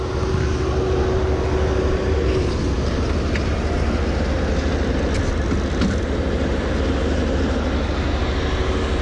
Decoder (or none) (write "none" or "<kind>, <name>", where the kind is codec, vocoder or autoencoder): none